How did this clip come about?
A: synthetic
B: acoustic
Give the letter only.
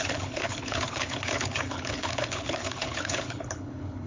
A